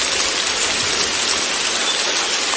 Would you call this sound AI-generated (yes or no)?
no